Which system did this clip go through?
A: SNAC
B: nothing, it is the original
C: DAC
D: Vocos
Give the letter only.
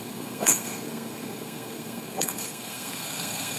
A